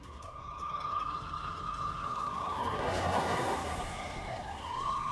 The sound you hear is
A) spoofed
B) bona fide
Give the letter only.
A